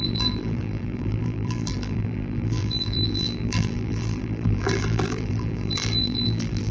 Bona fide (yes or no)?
no